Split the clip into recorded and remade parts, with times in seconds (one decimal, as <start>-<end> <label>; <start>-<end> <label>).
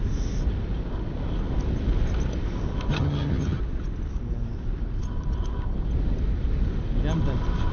0.0-2.9 recorded; 2.9-3.6 remade; 3.6-7.7 recorded